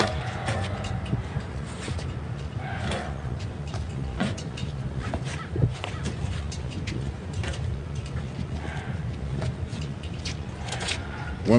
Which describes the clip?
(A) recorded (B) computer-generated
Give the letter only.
B